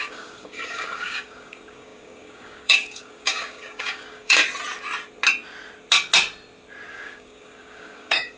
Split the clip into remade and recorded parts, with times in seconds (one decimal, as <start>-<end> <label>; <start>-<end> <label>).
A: 0.0-4.4 remade; 4.4-6.9 recorded; 6.9-8.4 remade